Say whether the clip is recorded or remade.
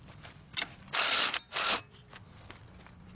recorded